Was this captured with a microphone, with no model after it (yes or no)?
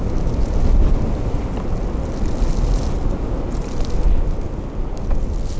yes